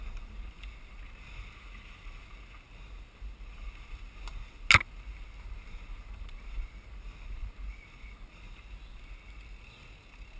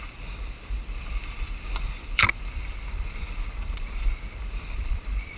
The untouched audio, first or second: first